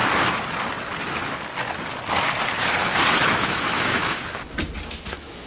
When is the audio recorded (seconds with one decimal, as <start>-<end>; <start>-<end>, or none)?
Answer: 0.0-3.1; 4.2-5.1